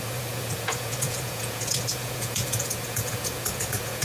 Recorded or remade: remade